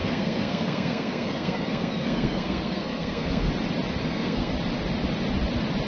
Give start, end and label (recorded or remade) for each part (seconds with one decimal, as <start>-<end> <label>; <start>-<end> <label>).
0.0-3.5 remade; 3.5-4.0 recorded; 4.0-4.5 remade; 4.5-5.9 recorded